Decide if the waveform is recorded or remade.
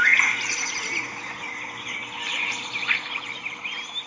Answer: remade